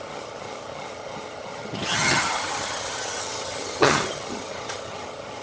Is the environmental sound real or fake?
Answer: fake